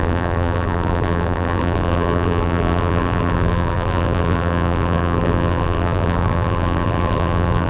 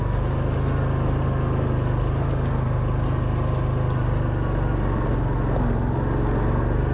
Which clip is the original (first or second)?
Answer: second